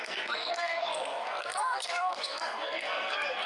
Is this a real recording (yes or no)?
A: no